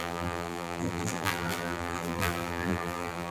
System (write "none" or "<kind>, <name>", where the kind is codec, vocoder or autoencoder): vocoder, BigVGAN v2